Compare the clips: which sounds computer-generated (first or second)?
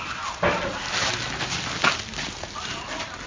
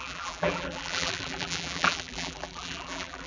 second